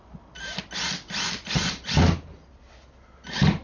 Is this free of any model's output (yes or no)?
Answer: yes